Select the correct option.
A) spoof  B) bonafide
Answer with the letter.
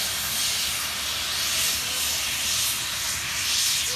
B